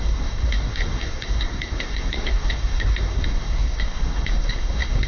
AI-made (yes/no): yes